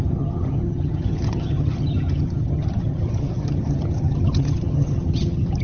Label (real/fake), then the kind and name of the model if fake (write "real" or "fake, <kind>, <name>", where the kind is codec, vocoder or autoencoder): fake, vocoder, HiFi-GAN